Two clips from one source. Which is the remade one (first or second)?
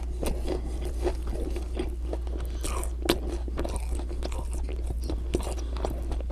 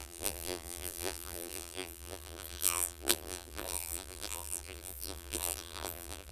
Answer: second